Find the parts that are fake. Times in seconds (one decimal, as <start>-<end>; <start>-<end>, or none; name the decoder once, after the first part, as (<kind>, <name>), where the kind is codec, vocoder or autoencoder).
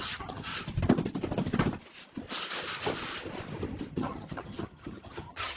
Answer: 0.0-0.5 (vocoder, HiFi-GAN); 3.9-5.6